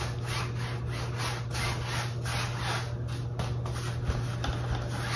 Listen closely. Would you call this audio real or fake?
real